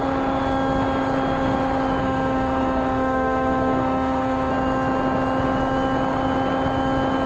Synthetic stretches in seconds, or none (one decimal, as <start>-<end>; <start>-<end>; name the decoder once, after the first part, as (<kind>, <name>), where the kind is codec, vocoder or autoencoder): 2.0-4.5 (autoencoder, DAC-VAE)